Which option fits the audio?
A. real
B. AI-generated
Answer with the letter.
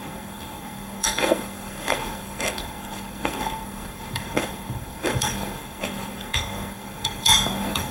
B